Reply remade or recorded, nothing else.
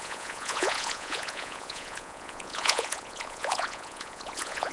remade